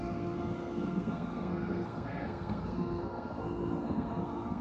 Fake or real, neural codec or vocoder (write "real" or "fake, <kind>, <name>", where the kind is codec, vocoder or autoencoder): fake, codec, SNAC